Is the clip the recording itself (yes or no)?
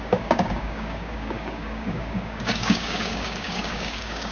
no